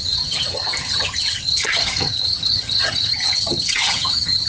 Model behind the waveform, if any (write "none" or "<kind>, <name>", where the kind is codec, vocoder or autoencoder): vocoder, HiFi-GAN